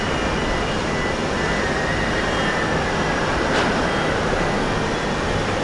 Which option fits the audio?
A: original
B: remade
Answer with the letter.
A